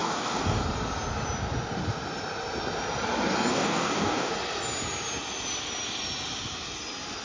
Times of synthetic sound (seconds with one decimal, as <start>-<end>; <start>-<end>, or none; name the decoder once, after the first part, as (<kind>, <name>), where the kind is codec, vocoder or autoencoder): 0.0-0.6 (codec, DAC); 3.5-4.3